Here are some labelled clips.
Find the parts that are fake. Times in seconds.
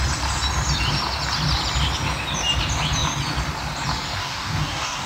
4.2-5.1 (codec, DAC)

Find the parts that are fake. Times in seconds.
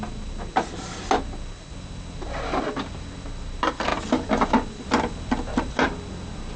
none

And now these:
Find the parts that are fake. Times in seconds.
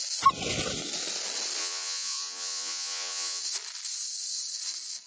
1.6-3.4 (vocoder, Vocos)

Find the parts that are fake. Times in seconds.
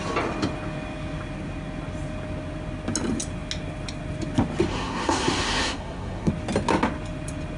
4.7-6.3 (codec, SNAC)